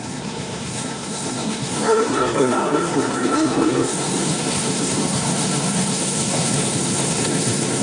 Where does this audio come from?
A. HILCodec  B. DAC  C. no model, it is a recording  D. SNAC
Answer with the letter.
D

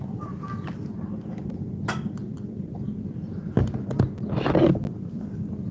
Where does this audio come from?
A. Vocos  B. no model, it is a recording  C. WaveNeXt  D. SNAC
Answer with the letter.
B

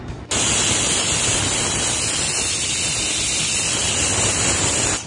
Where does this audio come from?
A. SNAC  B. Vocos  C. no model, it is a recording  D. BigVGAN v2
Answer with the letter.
C